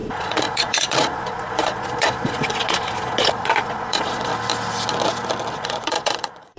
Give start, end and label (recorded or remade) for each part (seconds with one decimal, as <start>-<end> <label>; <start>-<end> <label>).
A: 0.0-4.3 remade; 4.3-5.5 recorded; 5.5-6.6 remade